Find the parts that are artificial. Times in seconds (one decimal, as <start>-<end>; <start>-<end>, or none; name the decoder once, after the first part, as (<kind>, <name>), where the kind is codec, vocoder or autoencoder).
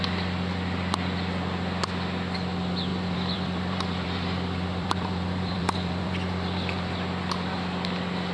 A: 2.9-6.9 (vocoder, BigVGAN v2)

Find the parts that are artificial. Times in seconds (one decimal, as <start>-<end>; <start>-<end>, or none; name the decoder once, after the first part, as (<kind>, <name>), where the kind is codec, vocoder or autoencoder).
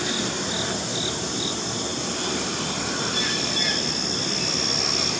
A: none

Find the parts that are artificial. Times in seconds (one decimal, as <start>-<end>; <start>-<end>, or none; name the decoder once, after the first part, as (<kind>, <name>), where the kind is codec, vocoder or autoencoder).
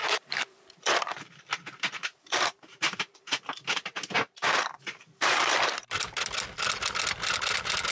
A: 0.0-1.5 (vocoder, BigVGAN v2); 2.1-5.9